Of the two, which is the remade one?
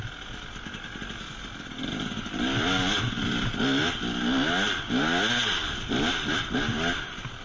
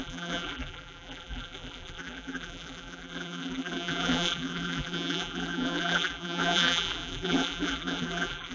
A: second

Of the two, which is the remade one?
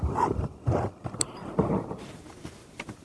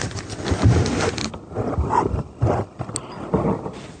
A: first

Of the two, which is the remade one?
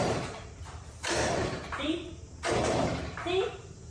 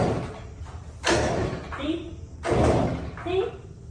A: first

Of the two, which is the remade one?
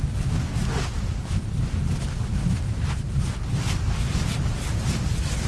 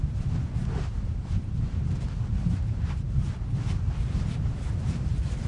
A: second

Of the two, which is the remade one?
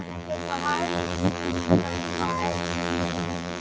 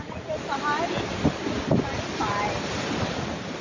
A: first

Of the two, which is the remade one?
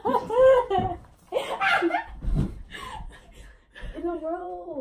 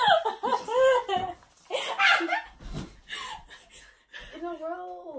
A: first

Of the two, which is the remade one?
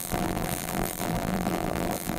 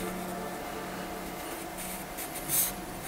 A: first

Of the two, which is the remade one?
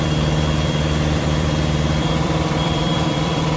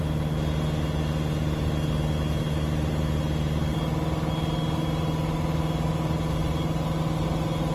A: first